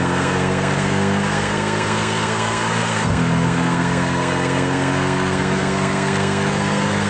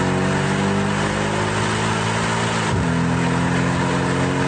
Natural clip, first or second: second